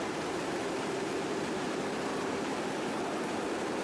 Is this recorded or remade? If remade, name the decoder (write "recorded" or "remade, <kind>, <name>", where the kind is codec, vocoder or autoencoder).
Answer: remade, vocoder, BigVGAN v2